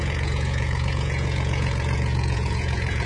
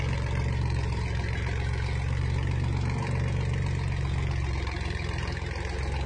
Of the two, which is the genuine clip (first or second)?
second